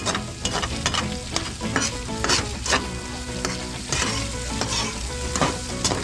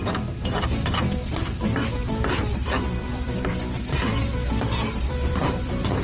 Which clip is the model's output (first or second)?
second